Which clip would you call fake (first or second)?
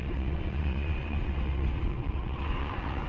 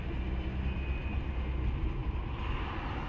first